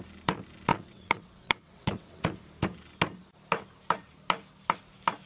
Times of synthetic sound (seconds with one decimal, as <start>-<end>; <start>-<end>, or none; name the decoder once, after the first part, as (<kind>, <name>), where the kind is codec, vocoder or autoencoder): 0.7-2.2 (vocoder, WaveNeXt)

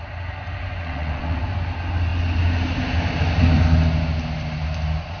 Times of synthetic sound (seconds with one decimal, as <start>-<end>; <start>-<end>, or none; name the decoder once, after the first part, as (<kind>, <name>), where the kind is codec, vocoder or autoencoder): 0.8-1.4 (vocoder, WaveNeXt)